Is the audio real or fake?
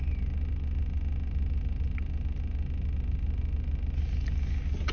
real